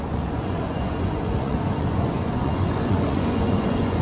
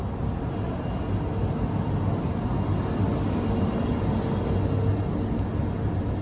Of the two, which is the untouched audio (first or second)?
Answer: second